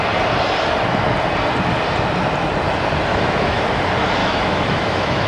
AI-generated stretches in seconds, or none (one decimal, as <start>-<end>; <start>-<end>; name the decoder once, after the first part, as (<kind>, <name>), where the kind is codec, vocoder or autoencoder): 3.1-3.8 (autoencoder, DAC-VAE); 4.2-5.3